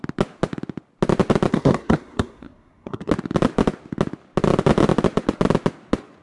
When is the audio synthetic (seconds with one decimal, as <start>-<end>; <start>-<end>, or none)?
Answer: 1.5-3.1